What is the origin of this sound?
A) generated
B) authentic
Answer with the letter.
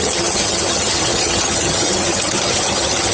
A